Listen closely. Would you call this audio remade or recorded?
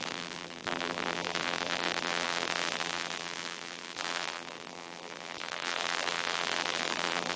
remade